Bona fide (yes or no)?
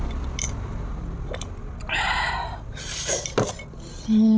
yes